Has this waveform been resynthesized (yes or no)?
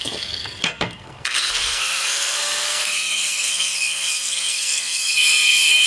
yes